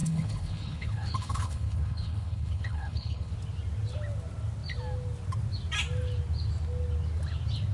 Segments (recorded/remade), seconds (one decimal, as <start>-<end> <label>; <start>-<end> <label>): 0.0-3.3 remade; 3.3-7.7 recorded